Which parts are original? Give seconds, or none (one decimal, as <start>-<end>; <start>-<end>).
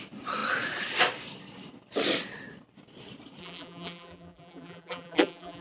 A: 0.0-3.4